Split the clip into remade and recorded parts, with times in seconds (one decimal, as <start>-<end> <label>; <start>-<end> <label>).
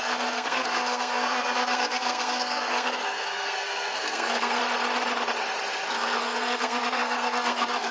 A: 0.0-4.6 remade; 4.6-5.9 recorded; 5.9-7.9 remade